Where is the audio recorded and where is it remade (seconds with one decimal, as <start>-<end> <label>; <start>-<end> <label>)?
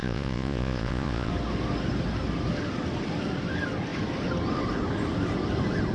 0.0-1.3 remade; 1.3-5.9 recorded